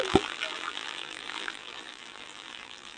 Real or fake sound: fake